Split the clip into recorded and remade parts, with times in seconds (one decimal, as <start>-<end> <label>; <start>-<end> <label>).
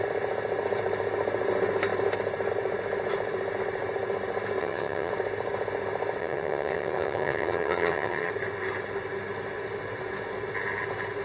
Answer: 0.0-4.6 recorded; 4.6-5.1 remade; 5.1-6.2 recorded; 6.2-8.3 remade; 8.3-11.2 recorded